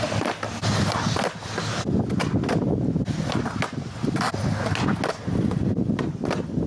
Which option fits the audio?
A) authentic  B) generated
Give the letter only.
A